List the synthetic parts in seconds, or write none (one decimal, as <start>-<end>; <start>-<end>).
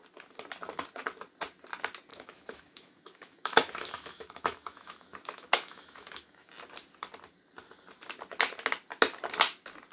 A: 2.1-6.5